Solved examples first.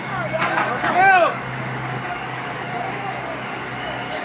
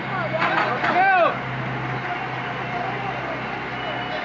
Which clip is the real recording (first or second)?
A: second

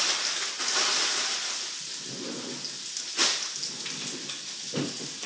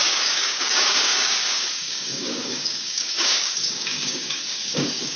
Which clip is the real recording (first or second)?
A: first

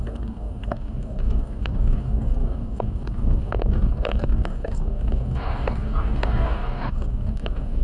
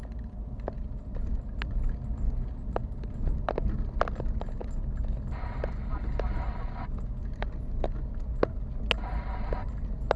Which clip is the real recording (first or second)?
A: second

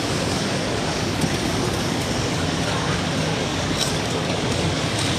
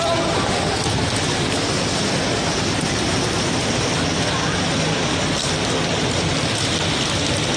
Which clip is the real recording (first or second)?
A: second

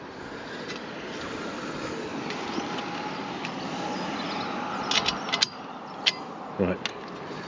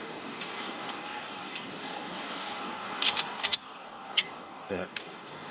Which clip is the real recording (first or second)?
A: first